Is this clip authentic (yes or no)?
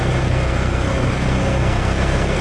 no